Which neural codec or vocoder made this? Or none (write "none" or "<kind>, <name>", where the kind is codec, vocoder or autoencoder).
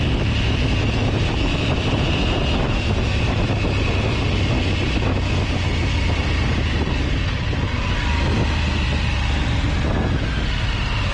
none